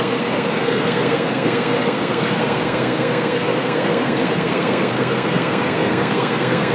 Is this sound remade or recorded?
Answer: remade